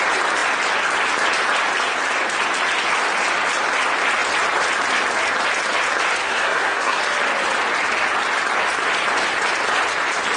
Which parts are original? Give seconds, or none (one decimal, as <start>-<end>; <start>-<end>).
0.0-6.2; 7.0-10.4